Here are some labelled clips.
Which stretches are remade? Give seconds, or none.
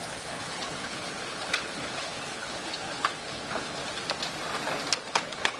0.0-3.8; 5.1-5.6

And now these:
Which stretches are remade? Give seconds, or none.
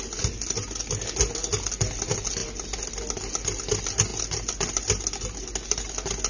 none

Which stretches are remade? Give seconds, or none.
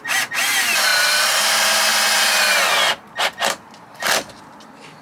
none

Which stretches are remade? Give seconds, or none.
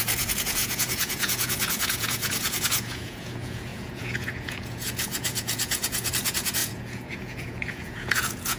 0.0-8.6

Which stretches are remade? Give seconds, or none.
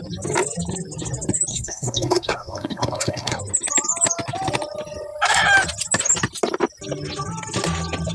1.5-3.4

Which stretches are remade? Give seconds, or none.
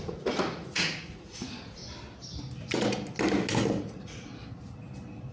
0.0-1.8; 3.8-4.3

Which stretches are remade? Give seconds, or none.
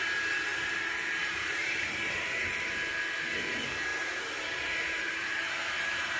0.5-2.4; 3.9-6.2